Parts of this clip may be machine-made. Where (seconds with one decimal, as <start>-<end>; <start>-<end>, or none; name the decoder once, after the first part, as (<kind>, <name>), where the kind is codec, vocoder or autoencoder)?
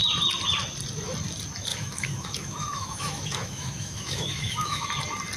1.7-4.9 (autoencoder, DAC-VAE)